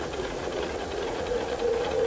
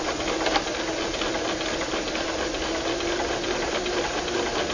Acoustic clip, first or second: second